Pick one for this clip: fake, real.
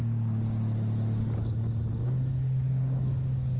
real